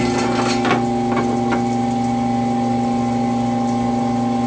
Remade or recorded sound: recorded